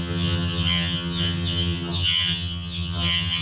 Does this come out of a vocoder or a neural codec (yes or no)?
yes